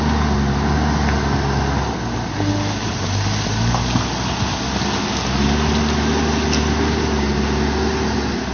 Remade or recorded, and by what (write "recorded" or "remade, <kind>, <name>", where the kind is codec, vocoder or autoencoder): recorded